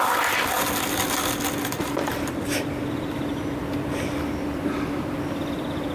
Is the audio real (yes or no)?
yes